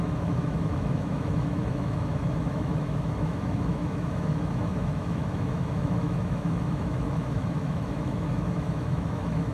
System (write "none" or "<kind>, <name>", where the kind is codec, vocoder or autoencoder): autoencoder, DAC-VAE